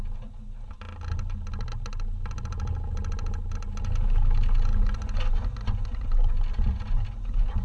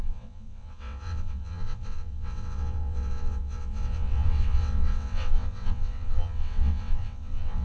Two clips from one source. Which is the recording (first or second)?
first